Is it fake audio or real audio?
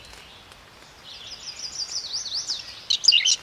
real